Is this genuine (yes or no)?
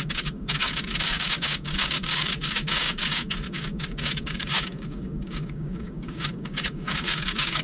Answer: no